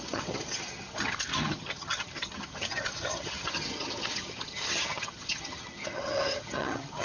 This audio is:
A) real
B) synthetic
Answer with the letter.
B